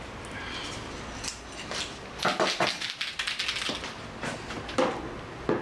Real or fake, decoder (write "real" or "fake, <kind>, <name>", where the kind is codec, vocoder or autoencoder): real